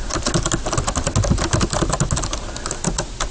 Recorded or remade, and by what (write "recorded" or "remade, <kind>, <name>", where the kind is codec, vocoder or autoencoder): recorded